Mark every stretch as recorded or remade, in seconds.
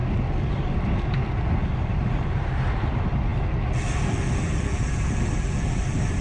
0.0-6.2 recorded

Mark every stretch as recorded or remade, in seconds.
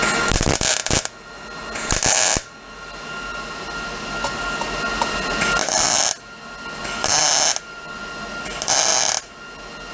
0.0-9.9 recorded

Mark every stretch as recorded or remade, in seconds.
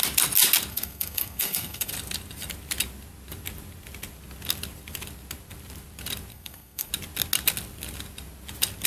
0.0-0.7 recorded; 0.7-1.9 remade; 1.9-6.3 recorded; 6.3-6.9 remade; 6.9-8.9 recorded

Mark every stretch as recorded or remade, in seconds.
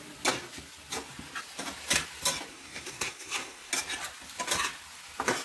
0.0-2.5 recorded; 2.5-3.7 remade; 3.7-5.4 recorded